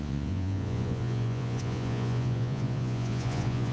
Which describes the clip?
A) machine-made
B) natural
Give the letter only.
A